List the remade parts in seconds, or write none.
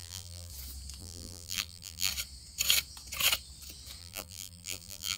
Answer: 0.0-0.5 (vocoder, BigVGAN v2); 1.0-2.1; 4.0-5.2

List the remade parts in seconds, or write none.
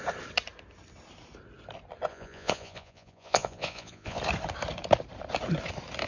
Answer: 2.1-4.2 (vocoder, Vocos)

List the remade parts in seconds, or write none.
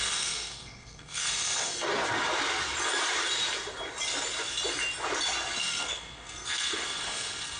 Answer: 0.0-1.9 (codec, SNAC); 5.6-7.6